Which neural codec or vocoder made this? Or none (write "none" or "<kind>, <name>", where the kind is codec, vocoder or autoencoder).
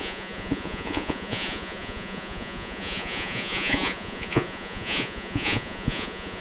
vocoder, Vocos